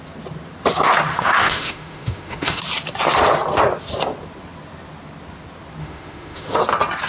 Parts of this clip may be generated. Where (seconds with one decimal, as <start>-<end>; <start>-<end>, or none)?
1.1-2.6; 5.8-6.6